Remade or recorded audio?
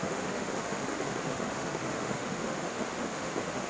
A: remade